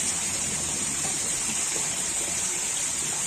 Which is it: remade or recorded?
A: remade